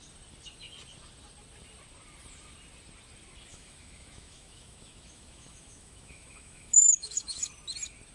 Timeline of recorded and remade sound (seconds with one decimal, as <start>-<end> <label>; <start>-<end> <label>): 0.0-3.5 recorded; 3.5-7.5 remade; 7.5-8.1 recorded